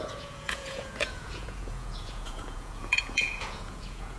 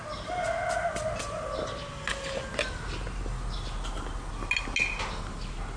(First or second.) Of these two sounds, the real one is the second